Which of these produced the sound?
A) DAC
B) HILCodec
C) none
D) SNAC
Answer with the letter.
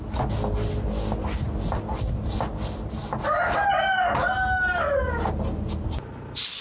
C